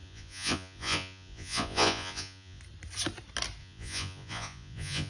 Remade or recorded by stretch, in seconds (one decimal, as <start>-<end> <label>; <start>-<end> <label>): 0.0-2.6 remade; 2.6-3.6 recorded; 3.6-5.1 remade